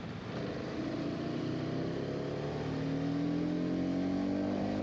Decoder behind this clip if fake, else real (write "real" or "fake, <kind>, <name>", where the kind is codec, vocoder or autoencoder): real